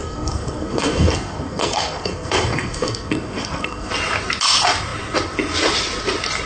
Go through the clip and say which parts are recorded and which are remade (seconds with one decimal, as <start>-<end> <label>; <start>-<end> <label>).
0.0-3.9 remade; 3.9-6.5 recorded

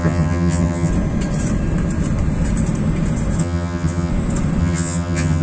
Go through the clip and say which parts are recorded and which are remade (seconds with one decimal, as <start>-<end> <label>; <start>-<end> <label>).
0.0-0.9 remade; 0.9-3.4 recorded; 3.4-4.1 remade; 4.1-4.6 recorded; 4.6-5.4 remade

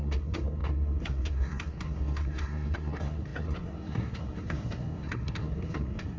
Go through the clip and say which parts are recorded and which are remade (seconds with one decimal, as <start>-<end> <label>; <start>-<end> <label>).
0.0-6.2 remade

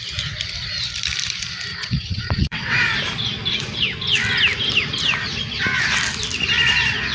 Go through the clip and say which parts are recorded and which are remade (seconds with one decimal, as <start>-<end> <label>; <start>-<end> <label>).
0.0-1.7 recorded; 1.7-2.8 remade; 2.8-7.1 recorded